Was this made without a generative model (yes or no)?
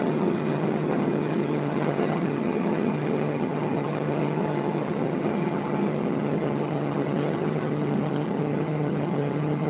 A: no